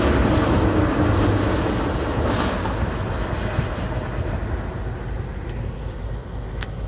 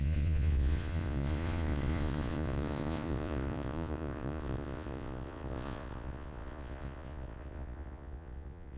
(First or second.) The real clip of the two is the first